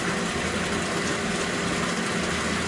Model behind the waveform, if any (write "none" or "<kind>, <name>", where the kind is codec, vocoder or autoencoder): none